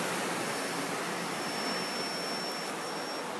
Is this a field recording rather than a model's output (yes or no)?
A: yes